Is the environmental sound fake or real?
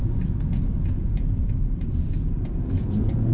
fake